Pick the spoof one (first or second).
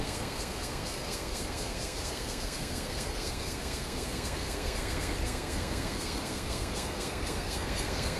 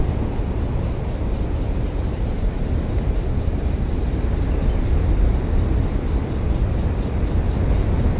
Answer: first